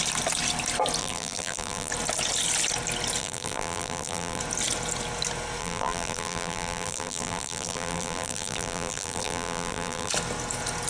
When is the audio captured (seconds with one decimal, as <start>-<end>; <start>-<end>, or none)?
0.0-1.0; 1.9-3.2; 4.4-5.6; 10.1-10.9